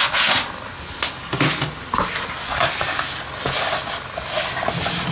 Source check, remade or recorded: recorded